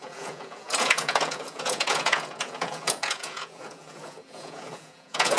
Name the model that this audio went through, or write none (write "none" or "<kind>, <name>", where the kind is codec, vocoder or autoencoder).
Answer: vocoder, Vocos